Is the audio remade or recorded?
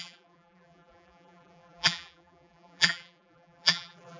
remade